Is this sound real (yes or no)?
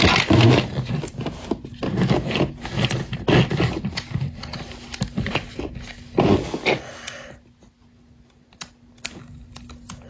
yes